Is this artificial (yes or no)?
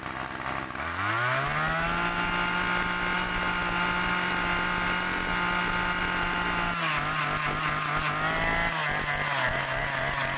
no